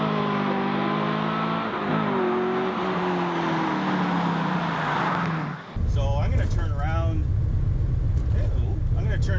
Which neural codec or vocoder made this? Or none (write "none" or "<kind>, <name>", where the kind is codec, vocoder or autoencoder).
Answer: none